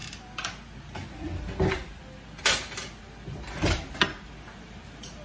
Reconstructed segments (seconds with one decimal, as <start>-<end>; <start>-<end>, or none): none